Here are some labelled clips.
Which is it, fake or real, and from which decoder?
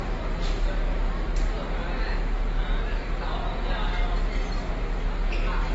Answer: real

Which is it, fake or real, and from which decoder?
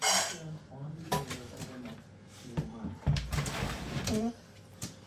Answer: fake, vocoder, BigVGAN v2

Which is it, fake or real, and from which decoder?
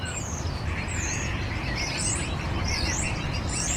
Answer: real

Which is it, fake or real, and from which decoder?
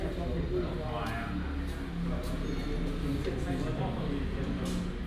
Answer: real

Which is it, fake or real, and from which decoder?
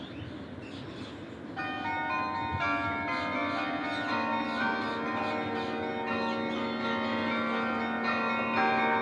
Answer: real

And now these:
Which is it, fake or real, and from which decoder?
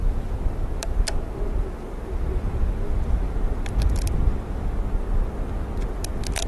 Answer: real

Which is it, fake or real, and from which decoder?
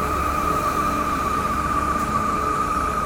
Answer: real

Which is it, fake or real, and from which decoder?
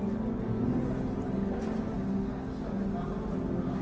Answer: real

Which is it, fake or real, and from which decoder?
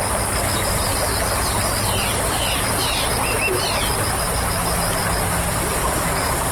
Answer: real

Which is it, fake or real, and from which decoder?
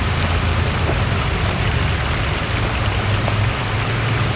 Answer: real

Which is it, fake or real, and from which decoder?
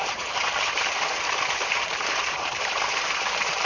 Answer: fake, vocoder, BigVGAN v2